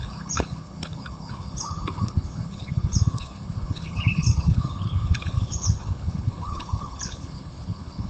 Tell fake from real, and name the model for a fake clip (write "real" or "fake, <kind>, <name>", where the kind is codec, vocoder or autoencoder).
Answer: fake, codec, HILCodec